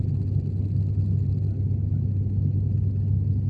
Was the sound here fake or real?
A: real